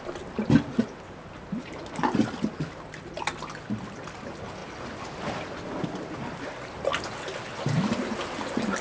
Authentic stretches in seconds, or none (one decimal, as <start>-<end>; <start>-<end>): 0.0-8.8